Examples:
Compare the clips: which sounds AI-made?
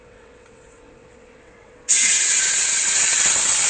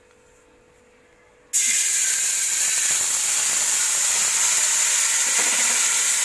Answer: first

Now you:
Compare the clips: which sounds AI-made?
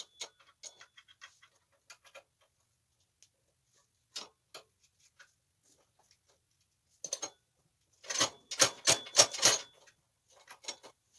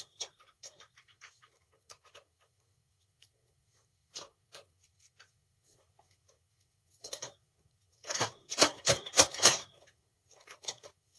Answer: second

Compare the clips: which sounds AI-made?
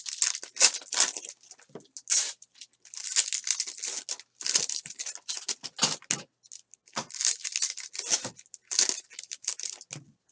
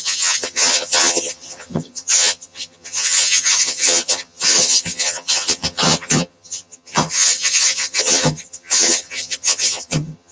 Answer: second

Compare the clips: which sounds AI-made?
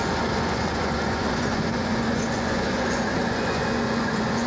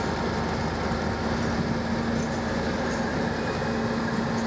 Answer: first